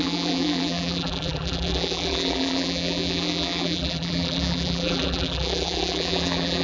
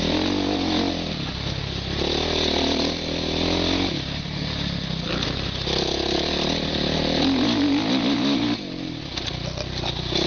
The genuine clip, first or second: second